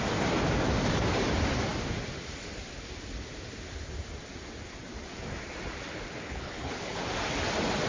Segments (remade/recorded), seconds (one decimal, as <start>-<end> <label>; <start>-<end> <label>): 0.0-6.3 recorded; 6.3-7.0 remade; 7.0-7.9 recorded

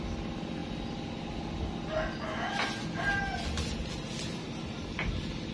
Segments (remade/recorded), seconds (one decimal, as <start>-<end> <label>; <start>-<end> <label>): 0.0-5.5 recorded

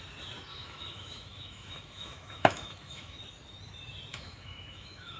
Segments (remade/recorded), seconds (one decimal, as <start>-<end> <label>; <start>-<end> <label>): 0.0-0.5 recorded; 0.5-3.2 remade; 3.2-4.1 recorded; 4.1-5.2 remade

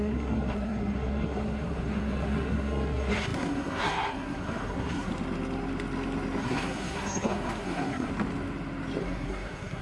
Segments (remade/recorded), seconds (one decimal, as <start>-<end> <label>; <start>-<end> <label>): 0.0-5.1 remade; 5.1-6.4 recorded; 6.4-8.1 remade; 8.1-9.0 recorded; 9.0-9.8 remade

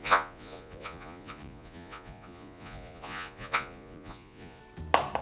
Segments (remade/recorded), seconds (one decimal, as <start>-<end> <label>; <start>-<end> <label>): 0.0-4.6 remade; 4.6-5.2 recorded

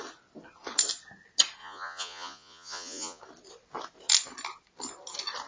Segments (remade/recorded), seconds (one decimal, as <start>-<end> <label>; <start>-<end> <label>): 0.0-1.6 recorded; 1.6-3.2 remade; 3.2-5.5 recorded

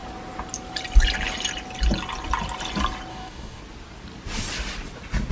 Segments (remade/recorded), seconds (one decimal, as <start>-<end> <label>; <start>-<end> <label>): 0.0-3.1 recorded; 3.1-3.6 remade; 3.6-5.3 recorded